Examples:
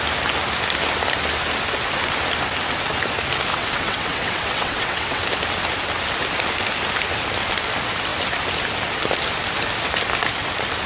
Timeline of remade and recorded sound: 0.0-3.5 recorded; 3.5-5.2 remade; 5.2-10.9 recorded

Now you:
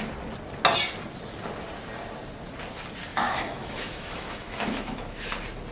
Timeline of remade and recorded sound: 0.0-3.1 recorded; 3.1-5.3 remade; 5.3-5.7 recorded

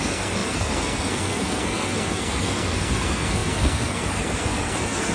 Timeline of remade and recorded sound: 0.0-5.1 remade

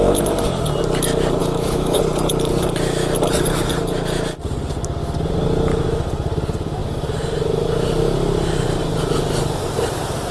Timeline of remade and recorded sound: 0.0-1.4 recorded; 1.4-2.0 remade; 2.0-10.3 recorded

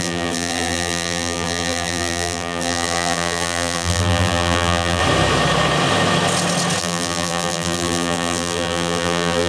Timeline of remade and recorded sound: 0.0-5.0 remade; 5.0-6.8 recorded; 6.8-9.5 remade